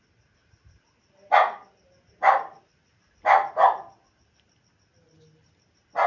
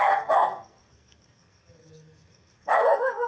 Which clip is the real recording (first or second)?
first